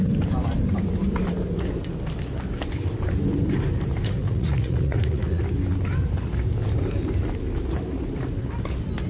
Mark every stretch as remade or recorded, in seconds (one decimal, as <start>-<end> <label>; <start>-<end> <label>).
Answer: 0.0-4.2 recorded; 4.2-5.4 remade; 5.4-9.1 recorded